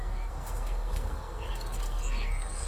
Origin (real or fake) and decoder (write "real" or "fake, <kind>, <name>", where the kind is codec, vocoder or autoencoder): fake, codec, SNAC